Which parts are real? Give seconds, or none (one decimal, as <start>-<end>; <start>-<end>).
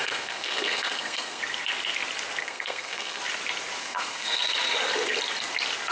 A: 1.4-2.4; 3.2-3.8; 4.4-5.9